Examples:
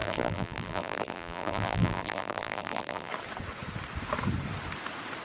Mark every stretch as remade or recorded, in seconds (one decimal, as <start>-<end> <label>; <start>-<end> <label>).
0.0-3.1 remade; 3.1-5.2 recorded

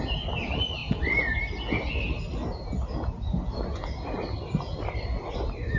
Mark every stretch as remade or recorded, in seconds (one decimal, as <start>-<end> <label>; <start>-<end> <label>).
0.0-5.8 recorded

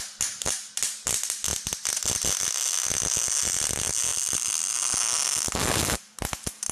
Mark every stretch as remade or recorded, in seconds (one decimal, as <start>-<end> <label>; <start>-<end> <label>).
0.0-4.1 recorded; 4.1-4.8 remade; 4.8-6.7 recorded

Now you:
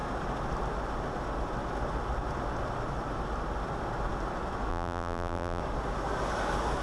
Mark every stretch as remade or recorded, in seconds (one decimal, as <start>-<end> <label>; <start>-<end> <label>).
0.0-4.7 recorded; 4.7-5.6 remade; 5.6-6.8 recorded

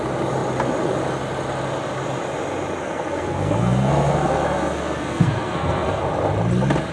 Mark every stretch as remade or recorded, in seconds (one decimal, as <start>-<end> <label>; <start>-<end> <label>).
0.0-2.8 recorded; 2.8-6.0 remade; 6.0-6.9 recorded

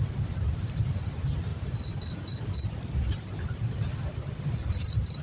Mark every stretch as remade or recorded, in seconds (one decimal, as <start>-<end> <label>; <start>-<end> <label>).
0.0-5.2 remade

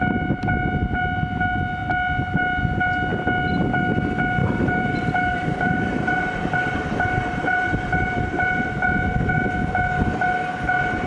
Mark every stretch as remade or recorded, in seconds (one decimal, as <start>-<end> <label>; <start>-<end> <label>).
0.0-4.4 recorded; 4.4-8.7 remade; 8.7-11.1 recorded

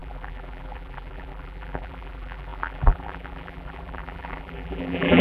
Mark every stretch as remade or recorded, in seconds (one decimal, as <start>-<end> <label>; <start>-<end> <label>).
0.0-5.2 remade